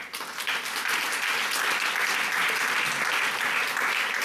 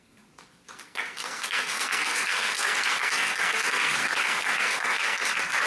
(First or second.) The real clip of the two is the first